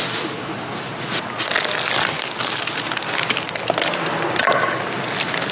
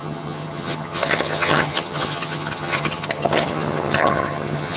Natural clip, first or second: first